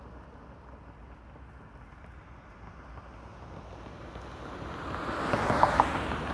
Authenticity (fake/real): real